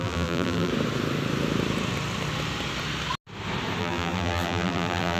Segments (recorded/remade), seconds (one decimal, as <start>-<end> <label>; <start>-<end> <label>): 0.0-0.7 remade; 0.7-3.8 recorded; 3.8-5.2 remade